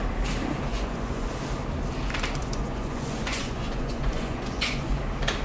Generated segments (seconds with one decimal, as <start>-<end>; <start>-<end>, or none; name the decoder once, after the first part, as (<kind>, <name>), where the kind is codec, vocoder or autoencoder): 0.7-1.3 (vocoder, Vocos); 2.4-5.0